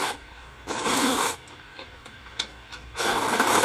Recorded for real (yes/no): no